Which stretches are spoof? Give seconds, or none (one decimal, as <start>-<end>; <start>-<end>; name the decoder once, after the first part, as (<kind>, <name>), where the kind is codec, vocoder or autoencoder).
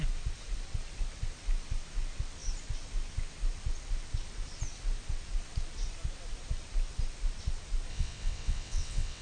7.9-9.2 (vocoder, WaveNeXt)